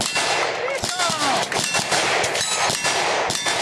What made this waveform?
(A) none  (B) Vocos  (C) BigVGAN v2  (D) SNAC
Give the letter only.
A